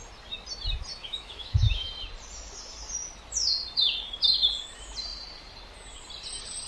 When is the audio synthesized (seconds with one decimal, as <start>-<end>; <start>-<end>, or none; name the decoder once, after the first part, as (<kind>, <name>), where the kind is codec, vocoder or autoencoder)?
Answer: 0.9-1.9 (autoencoder, DAC-VAE)